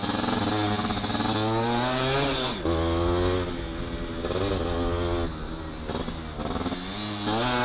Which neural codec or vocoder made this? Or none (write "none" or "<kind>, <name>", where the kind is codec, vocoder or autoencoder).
none